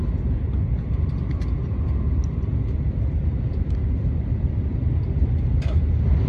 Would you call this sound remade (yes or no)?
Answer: no